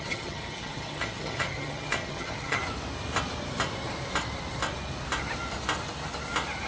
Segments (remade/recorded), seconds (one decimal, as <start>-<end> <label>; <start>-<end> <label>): 0.0-2.6 remade; 2.6-6.7 recorded